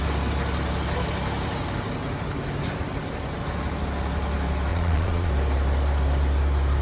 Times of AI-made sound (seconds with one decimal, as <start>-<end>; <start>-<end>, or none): 4.7-5.3